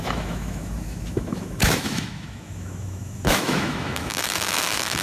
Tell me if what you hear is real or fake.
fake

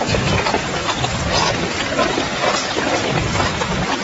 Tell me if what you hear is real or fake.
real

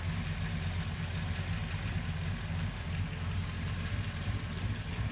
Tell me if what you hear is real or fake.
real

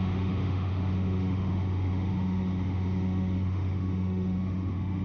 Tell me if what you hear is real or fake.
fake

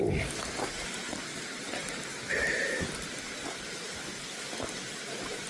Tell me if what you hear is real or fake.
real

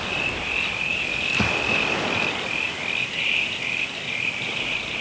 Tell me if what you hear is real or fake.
real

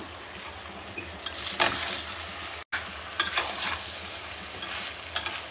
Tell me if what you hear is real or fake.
real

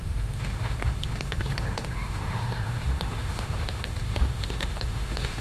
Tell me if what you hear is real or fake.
fake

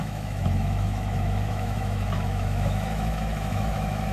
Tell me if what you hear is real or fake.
fake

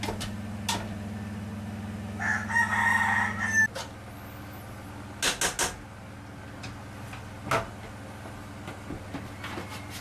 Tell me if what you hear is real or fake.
real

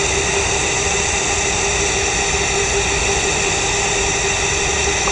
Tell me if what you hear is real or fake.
real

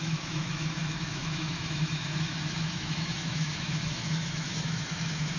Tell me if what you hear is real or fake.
fake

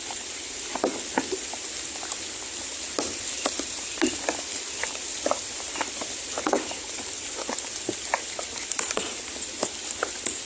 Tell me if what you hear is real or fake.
real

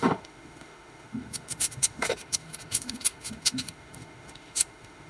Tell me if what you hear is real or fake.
fake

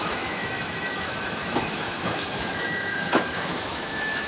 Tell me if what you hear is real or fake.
fake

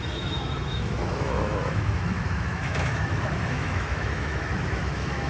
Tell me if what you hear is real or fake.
fake